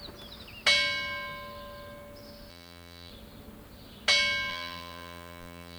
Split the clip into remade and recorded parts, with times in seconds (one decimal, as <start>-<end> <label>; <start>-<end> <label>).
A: 0.0-2.5 recorded; 2.5-3.1 remade; 3.1-4.5 recorded; 4.5-5.8 remade